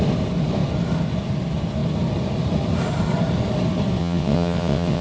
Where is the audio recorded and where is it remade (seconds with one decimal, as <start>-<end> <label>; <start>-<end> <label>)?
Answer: 0.0-4.0 recorded; 4.0-5.0 remade